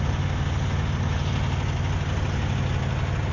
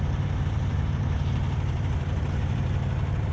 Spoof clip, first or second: second